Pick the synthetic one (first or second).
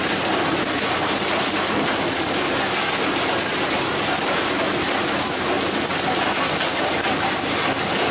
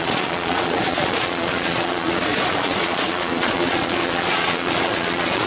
second